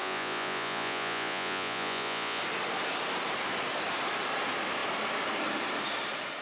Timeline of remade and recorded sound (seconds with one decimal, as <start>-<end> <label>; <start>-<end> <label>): 0.0-2.4 remade; 2.4-6.4 recorded